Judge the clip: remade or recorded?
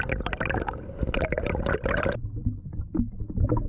recorded